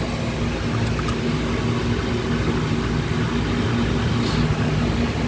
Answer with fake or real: real